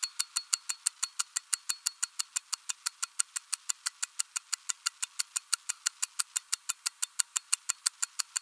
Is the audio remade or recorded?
recorded